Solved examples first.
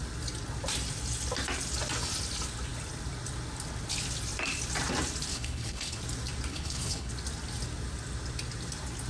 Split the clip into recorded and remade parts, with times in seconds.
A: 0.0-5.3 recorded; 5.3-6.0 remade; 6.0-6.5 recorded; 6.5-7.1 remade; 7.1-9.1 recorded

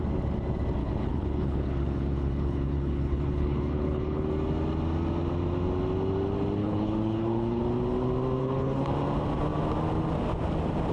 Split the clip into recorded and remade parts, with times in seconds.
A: 0.0-0.8 recorded; 0.8-4.3 remade; 4.3-6.6 recorded; 6.6-7.6 remade; 7.6-8.4 recorded; 8.4-8.9 remade; 8.9-10.9 recorded

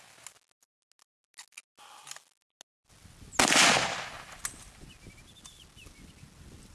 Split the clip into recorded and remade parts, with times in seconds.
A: 0.0-6.7 recorded

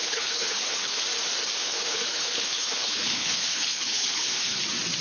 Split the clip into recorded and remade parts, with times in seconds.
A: 0.0-1.0 remade; 1.0-1.6 recorded; 1.6-4.6 remade; 4.6-5.0 recorded